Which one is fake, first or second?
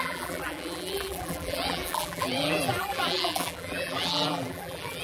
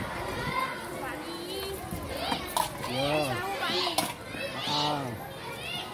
first